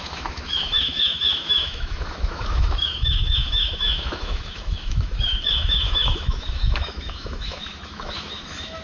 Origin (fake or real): fake